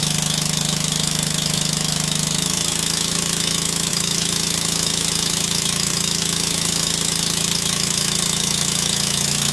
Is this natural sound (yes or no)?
no